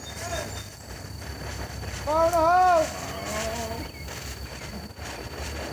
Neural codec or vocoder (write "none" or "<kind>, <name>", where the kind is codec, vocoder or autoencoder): none